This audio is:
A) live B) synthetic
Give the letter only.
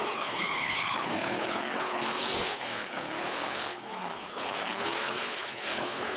B